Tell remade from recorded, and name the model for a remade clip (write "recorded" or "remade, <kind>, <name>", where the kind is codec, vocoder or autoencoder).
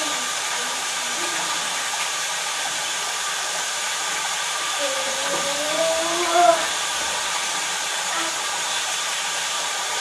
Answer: remade, vocoder, BigVGAN v2